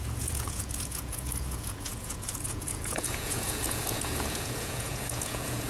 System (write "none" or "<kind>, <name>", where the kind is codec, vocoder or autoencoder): vocoder, Vocos